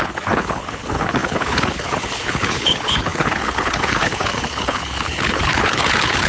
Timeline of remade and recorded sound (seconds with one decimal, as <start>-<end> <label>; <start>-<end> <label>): 0.0-6.3 remade